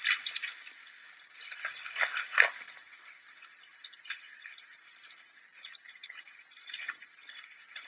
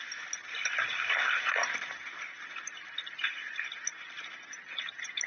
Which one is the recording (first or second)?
second